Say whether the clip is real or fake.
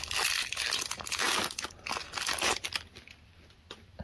real